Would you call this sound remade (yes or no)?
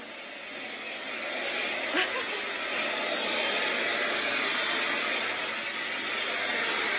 no